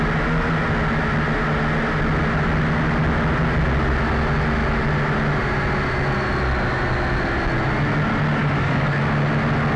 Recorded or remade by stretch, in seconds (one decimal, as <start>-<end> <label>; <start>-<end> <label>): 0.0-8.4 recorded; 8.4-9.0 remade; 9.0-9.8 recorded

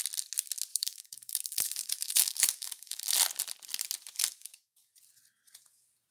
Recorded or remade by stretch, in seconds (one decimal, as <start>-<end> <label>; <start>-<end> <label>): 0.0-0.7 recorded; 0.7-3.0 remade; 3.0-4.3 recorded; 4.3-4.9 remade; 4.9-6.1 recorded